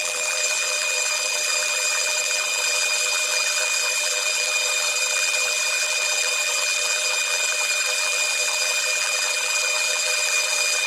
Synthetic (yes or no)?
yes